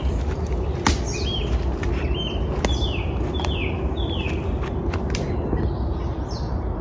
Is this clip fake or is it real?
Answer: real